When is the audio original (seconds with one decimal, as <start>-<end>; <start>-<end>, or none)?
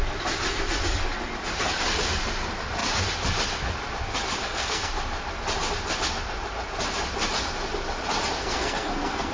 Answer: 0.0-4.4; 4.9-8.4